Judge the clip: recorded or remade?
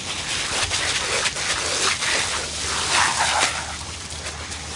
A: recorded